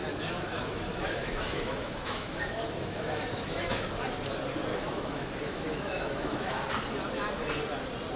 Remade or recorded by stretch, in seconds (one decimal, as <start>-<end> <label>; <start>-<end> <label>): 0.0-3.9 remade; 3.9-4.7 recorded; 4.7-6.5 remade; 6.5-8.2 recorded